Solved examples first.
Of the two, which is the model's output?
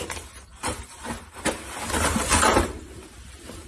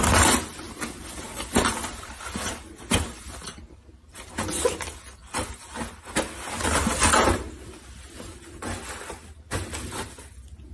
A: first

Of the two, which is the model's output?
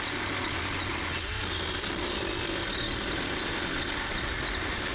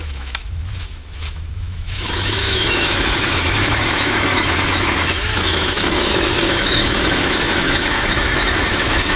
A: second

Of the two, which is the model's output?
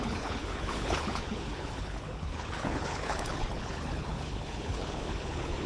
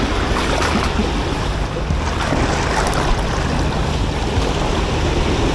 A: first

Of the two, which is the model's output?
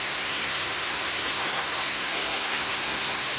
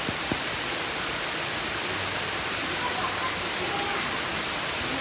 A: first